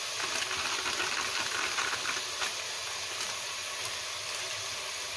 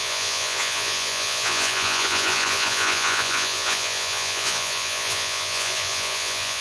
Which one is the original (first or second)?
first